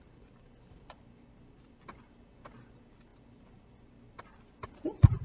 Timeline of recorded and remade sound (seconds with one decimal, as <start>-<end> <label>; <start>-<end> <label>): 0.0-5.2 recorded